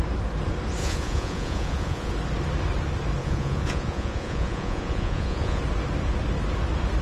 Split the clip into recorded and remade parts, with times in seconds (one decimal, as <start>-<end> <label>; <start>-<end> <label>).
0.0-0.8 recorded; 0.8-2.1 remade; 2.1-3.2 recorded; 3.2-5.6 remade; 5.6-7.0 recorded